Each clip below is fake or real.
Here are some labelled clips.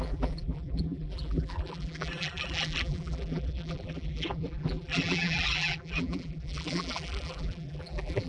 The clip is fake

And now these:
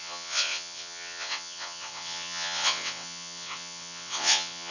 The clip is fake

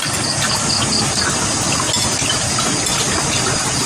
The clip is real